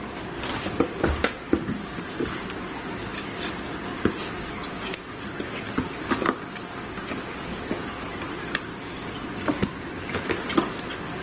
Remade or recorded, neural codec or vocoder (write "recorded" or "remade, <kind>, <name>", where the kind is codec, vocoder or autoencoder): recorded